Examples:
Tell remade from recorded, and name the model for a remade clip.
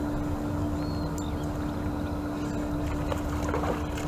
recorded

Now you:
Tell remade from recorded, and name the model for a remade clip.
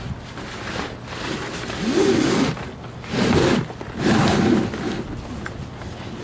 recorded